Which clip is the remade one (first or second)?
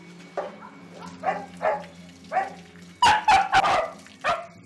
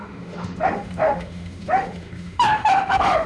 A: second